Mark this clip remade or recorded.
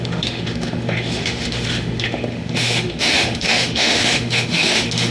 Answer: remade